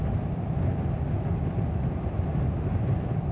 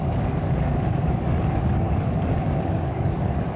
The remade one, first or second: second